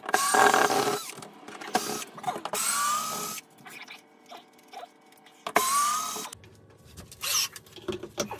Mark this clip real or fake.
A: real